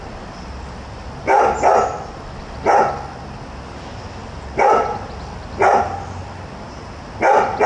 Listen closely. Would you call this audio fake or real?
real